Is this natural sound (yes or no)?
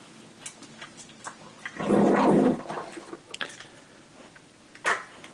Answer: yes